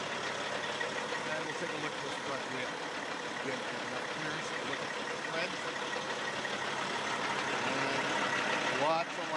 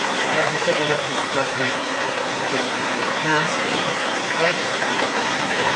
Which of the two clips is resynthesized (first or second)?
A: second